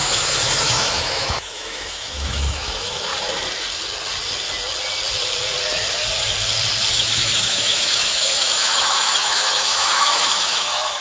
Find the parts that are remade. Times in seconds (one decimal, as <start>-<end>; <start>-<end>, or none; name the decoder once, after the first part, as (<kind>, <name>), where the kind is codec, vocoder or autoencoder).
0.0-3.1 (autoencoder, DAC-VAE); 6.9-11.0